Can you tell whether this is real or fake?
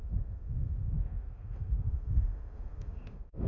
fake